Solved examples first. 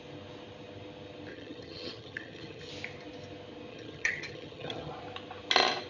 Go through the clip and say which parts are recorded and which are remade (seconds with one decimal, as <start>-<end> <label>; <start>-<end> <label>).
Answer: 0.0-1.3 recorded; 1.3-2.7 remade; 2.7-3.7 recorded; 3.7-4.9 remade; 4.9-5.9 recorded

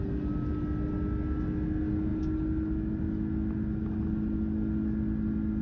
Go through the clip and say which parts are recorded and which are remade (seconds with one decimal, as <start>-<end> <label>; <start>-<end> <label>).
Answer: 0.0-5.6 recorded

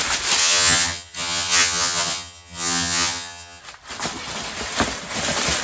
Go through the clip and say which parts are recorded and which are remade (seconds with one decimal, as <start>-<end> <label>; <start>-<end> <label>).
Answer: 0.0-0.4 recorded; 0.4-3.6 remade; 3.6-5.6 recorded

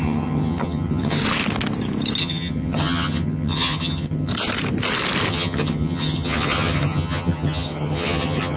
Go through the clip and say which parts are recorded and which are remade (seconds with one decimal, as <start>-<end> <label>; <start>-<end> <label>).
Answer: 0.0-1.2 remade; 1.2-2.2 recorded; 2.2-4.3 remade; 4.3-5.3 recorded; 5.3-8.6 remade

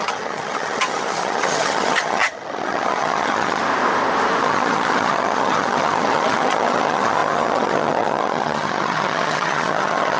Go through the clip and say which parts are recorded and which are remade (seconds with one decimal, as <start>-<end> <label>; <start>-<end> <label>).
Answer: 0.0-3.6 remade; 3.6-4.4 recorded; 4.4-10.2 remade